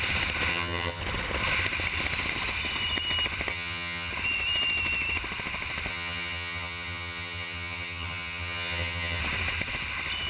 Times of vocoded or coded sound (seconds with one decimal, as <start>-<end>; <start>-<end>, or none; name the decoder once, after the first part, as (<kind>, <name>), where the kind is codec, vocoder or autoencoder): 0.5-1.0 (vocoder, HiFi-GAN); 3.5-4.1; 5.9-9.2